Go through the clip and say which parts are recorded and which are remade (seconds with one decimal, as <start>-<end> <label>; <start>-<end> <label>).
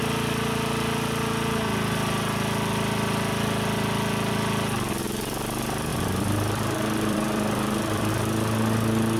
0.0-5.9 recorded; 5.9-8.1 remade; 8.1-9.2 recorded